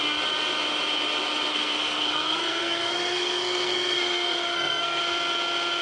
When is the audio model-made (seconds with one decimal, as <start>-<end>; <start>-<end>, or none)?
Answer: 1.5-5.0